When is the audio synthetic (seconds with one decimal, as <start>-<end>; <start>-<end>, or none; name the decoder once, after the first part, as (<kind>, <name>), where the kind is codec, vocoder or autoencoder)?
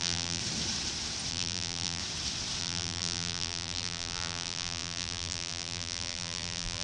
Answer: 0.0-0.4 (vocoder, BigVGAN v2); 1.3-2.0; 2.6-6.8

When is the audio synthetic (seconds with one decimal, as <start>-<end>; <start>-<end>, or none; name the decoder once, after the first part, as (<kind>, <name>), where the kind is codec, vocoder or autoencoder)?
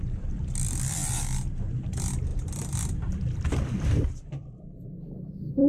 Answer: 0.0-1.0 (vocoder, BigVGAN v2); 1.9-5.7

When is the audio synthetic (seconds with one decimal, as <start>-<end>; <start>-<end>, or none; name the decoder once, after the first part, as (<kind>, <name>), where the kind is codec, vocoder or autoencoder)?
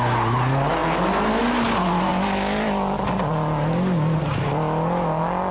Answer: none